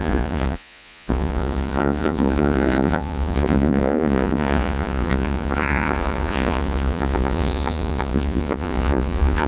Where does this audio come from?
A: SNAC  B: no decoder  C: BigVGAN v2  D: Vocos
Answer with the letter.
D